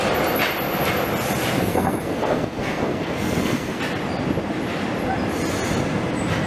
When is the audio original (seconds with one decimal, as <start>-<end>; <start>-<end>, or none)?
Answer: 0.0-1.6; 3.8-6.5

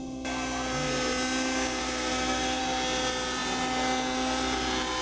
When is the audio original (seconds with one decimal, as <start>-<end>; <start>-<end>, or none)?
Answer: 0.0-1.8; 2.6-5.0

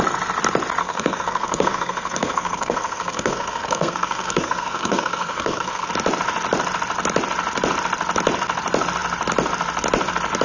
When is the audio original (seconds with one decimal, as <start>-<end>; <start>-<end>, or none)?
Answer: 0.0-0.8; 5.9-10.4

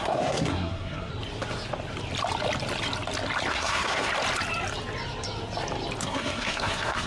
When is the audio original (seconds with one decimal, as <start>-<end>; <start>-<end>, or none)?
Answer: 1.1-3.5; 4.1-6.0

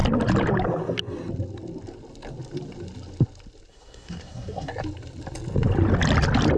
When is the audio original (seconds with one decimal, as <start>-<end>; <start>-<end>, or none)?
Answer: 0.0-3.7; 4.7-6.6

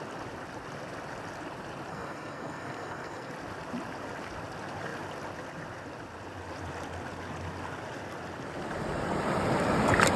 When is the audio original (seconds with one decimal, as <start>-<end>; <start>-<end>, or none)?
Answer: 0.0-1.9; 3.3-10.2